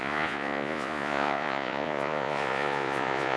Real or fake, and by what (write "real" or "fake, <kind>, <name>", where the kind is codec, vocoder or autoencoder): fake, vocoder, Vocos